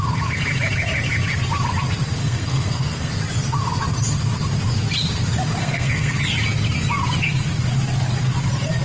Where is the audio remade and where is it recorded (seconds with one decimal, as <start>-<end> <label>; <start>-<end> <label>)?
0.0-2.2 recorded; 2.2-3.1 remade; 3.1-5.6 recorded; 5.6-6.1 remade; 6.1-8.8 recorded